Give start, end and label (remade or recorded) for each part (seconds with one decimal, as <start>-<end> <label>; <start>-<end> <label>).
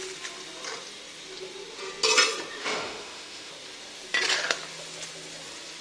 0.0-2.6 recorded; 2.6-3.5 remade; 3.5-5.8 recorded